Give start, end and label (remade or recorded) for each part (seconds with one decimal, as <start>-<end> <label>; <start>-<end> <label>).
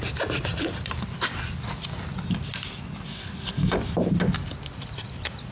0.0-5.5 recorded